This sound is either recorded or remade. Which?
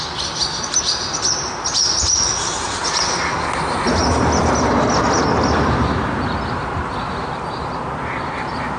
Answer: recorded